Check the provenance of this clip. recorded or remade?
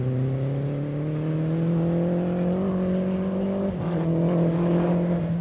recorded